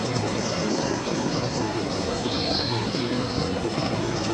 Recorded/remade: remade